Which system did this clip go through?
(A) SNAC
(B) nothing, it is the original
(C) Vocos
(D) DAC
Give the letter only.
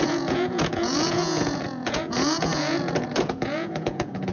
C